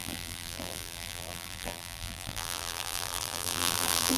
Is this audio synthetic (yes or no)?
yes